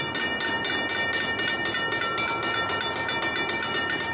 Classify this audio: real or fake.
real